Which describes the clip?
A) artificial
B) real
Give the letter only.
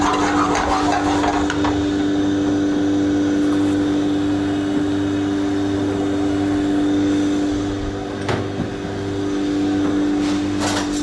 B